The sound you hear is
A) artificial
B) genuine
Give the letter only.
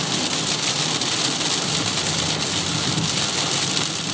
B